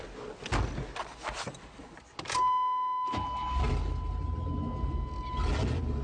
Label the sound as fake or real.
real